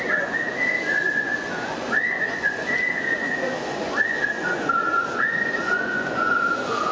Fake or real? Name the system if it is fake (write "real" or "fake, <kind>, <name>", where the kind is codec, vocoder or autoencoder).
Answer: fake, vocoder, Vocos